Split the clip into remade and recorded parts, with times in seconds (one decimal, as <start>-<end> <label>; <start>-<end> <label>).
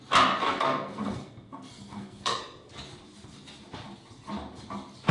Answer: 0.0-0.4 recorded; 0.4-2.4 remade; 2.4-5.1 recorded